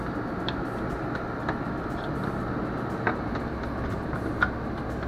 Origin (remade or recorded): recorded